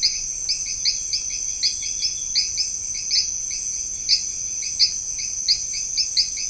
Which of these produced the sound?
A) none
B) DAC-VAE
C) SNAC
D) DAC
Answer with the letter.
A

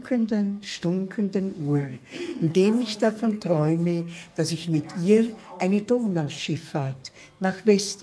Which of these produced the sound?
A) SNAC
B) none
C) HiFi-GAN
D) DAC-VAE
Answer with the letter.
A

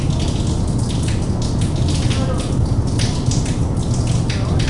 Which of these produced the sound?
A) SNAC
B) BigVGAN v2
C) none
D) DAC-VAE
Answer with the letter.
C